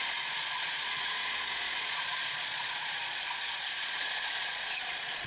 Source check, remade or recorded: remade